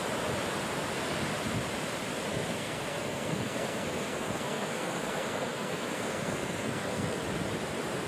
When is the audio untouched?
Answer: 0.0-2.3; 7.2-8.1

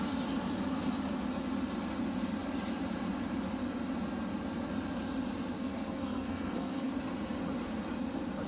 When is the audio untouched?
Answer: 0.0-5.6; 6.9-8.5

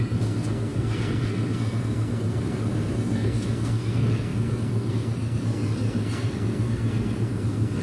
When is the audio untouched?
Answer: none